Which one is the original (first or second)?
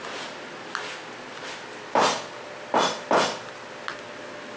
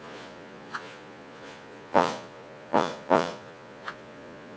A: first